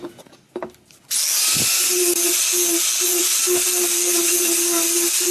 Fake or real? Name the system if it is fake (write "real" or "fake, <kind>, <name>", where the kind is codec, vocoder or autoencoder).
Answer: real